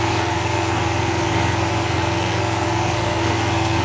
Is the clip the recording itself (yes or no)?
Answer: no